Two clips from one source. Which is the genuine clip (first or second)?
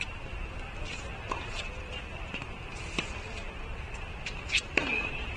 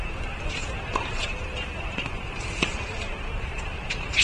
first